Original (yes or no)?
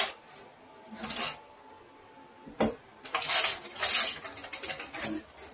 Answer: yes